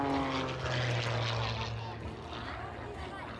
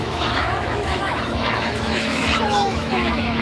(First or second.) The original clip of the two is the first